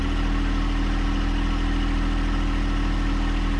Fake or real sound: real